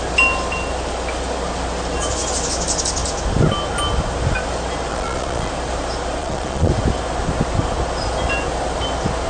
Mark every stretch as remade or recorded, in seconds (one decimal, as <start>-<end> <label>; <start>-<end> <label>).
0.0-4.9 recorded; 4.9-5.5 remade; 5.5-6.2 recorded; 6.2-6.7 remade; 6.7-9.3 recorded